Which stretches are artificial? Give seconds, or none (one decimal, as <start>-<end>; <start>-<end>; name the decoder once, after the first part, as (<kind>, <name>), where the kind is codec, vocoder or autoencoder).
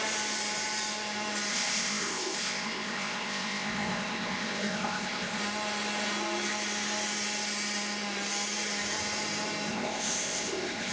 1.5-5.4 (codec, ZipCodec); 9.7-10.9